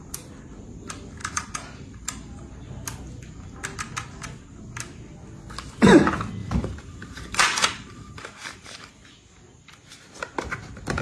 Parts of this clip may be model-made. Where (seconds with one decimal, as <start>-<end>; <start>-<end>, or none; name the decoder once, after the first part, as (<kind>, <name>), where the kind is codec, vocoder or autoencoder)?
1.2-2.5 (vocoder, BigVGAN v2); 6.4-8.9